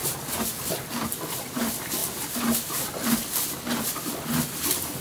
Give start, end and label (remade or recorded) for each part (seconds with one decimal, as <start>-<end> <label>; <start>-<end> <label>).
0.0-0.6 recorded; 0.6-2.0 remade; 2.0-4.1 recorded; 4.1-5.0 remade